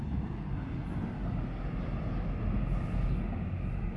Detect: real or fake real